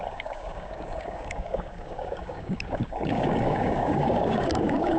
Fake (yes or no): yes